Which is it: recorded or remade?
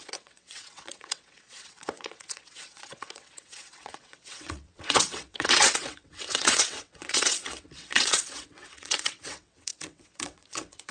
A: remade